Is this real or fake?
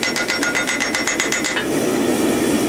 real